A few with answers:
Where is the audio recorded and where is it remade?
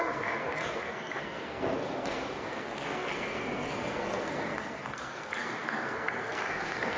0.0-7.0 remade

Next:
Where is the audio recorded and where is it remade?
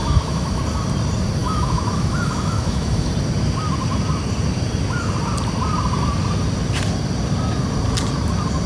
0.0-0.6 remade; 0.6-1.4 recorded; 1.4-3.1 remade; 3.1-8.7 recorded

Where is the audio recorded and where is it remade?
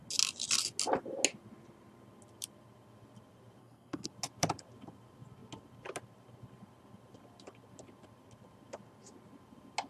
0.0-3.6 recorded; 3.6-4.1 remade; 4.1-9.9 recorded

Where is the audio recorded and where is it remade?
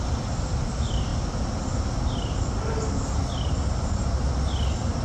0.0-5.0 recorded